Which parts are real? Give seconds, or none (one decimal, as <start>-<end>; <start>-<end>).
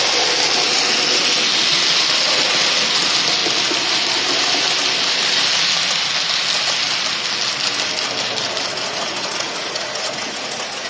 0.0-8.7